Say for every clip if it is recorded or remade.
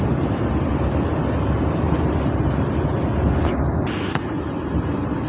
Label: recorded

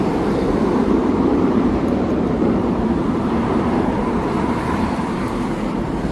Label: remade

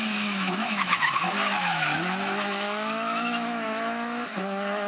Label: remade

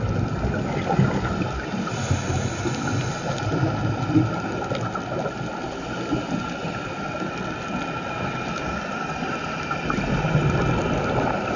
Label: recorded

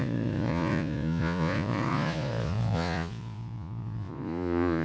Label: remade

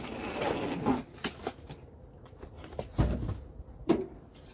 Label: recorded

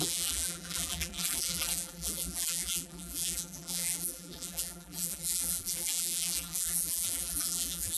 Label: remade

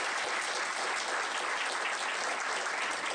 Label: recorded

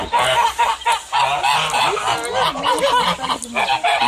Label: recorded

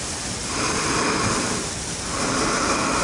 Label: recorded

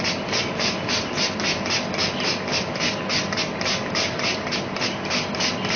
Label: recorded